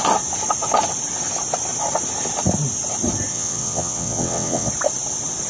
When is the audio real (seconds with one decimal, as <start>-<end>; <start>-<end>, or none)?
0.0-3.3; 4.7-5.5